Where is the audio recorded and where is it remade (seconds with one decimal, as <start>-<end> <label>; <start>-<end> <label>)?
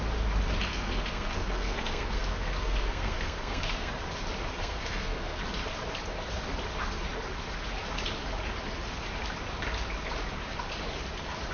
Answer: 0.0-0.7 recorded; 0.7-3.9 remade; 3.9-4.6 recorded; 4.6-5.4 remade; 5.4-11.5 recorded